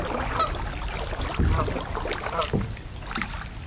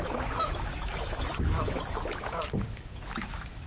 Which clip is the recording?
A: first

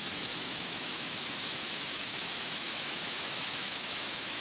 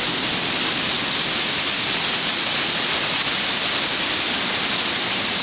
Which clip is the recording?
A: second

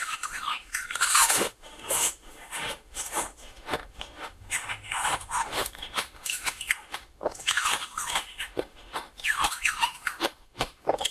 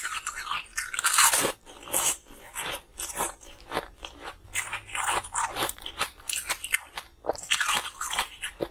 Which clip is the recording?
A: second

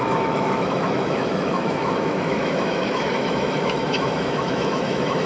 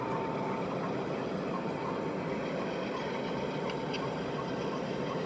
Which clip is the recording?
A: second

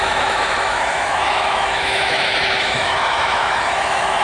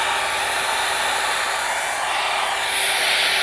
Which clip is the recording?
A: second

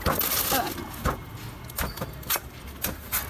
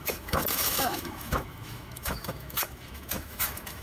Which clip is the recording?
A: first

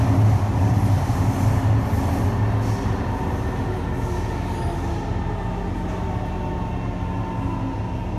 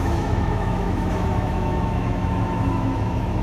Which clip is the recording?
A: first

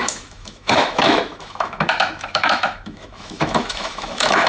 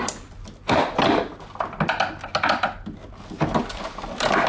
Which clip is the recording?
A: second